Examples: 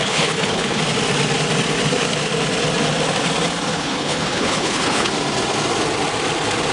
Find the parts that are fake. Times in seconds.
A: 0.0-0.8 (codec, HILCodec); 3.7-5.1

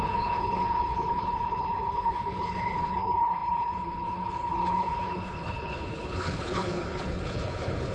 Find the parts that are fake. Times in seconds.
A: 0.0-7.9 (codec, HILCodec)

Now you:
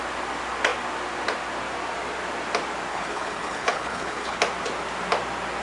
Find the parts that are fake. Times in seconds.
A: 2.9-4.4 (codec, HILCodec)

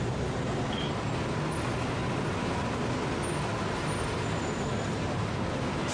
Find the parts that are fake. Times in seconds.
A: none

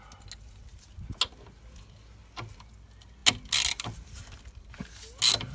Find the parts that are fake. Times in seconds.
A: none

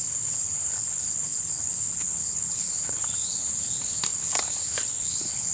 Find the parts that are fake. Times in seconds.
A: 0.0-5.5 (codec, HILCodec)

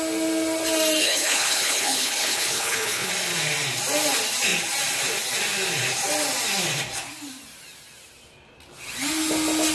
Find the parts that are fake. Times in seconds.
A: 1.0-3.1 (codec, HILCodec)

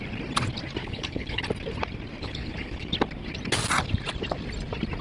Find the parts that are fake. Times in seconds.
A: 0.8-1.4 (codec, HILCodec); 2.2-2.9